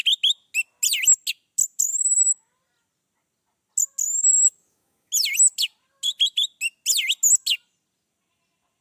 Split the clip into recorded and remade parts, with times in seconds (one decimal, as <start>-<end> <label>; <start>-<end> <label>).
0.0-4.2 recorded; 4.2-5.1 remade; 5.1-8.8 recorded